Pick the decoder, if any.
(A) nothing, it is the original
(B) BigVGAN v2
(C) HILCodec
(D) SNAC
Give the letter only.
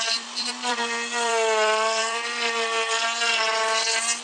B